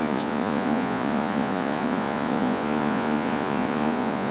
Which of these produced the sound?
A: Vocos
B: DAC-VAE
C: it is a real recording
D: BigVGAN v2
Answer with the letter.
A